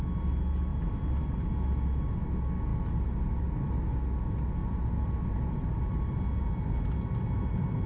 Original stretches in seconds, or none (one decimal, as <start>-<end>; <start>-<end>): 0.0-4.6; 6.2-7.9